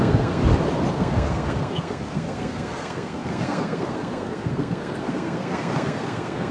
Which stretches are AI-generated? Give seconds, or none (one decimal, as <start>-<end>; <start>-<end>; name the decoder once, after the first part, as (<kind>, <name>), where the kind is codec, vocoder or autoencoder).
0.0-0.4 (codec, SNAC); 0.9-6.5